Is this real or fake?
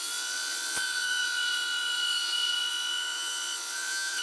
fake